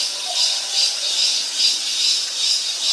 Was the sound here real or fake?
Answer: fake